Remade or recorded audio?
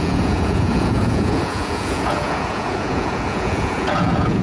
remade